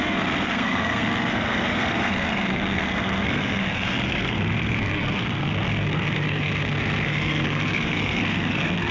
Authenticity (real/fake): fake